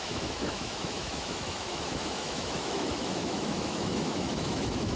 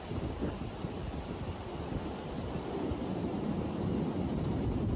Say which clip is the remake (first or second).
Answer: first